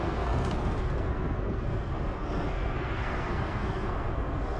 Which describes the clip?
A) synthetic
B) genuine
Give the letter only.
A